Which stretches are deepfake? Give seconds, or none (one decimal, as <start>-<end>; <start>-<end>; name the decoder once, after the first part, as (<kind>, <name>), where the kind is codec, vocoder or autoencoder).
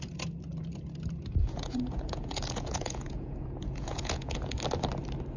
1.4-4.6 (vocoder, Vocos)